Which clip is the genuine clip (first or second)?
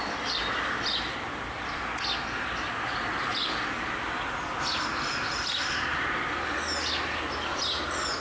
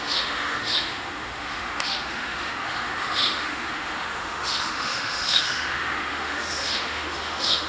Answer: first